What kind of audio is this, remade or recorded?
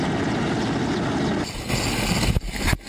recorded